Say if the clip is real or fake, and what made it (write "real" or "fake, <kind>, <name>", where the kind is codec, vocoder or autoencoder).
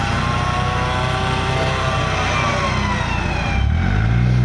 real